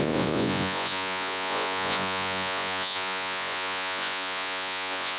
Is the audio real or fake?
fake